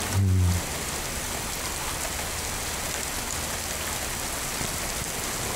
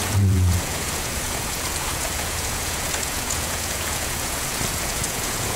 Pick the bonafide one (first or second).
first